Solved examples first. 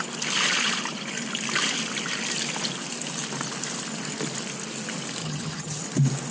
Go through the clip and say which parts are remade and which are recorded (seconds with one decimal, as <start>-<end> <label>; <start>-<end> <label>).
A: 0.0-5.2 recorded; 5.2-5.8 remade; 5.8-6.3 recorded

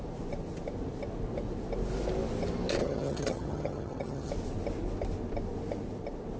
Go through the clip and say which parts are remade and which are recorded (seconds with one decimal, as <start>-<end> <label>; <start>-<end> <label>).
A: 0.0-2.8 recorded; 2.8-4.3 remade; 4.3-6.4 recorded

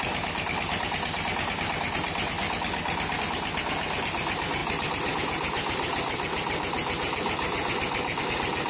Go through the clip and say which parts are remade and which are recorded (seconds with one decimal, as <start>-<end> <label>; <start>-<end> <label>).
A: 0.0-8.7 recorded

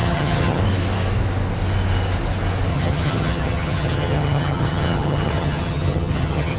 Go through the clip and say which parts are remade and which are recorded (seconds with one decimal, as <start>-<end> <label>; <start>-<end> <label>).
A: 0.0-0.6 remade; 0.6-2.7 recorded; 2.7-6.6 remade

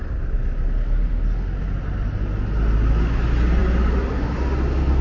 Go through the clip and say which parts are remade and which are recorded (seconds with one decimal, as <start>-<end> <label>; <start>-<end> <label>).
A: 0.0-5.0 recorded

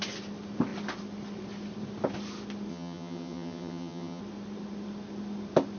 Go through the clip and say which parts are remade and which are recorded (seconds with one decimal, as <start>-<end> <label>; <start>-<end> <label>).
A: 0.0-2.7 recorded; 2.7-4.2 remade; 4.2-5.8 recorded

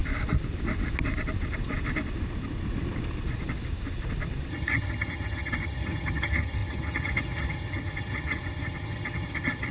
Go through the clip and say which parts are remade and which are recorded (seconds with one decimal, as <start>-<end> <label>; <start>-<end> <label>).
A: 0.0-4.5 recorded; 4.5-9.7 remade